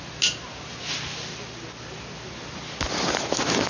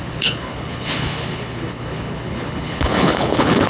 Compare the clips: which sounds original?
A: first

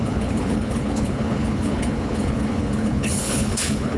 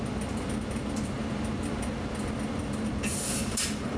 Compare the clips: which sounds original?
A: second